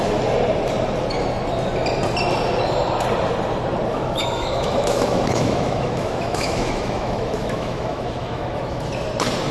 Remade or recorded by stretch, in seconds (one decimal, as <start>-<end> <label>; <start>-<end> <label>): 0.0-3.9 recorded; 3.9-8.9 remade; 8.9-9.5 recorded